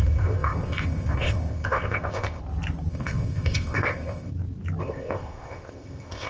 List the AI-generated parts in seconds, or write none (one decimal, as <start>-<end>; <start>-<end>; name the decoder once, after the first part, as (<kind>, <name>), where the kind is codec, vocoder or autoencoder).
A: 0.0-2.4 (codec, ZipCodec); 2.9-4.3; 4.8-6.3